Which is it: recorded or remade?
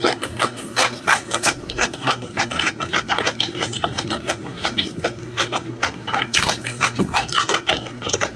remade